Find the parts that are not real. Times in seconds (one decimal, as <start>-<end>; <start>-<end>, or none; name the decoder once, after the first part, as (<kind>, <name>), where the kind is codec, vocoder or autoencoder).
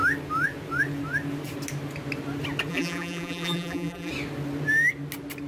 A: 2.7-4.1 (vocoder, BigVGAN v2)